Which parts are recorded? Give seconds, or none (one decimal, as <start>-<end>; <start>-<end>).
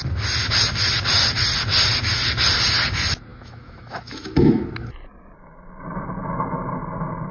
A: 0.0-3.3; 4.6-7.3